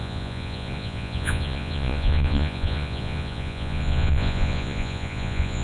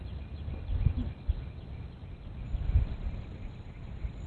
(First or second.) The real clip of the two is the second